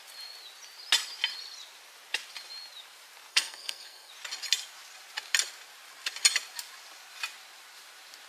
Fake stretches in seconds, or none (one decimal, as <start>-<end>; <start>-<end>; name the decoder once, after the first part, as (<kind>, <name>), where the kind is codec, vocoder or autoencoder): 3.3-4.1 (codec, SNAC)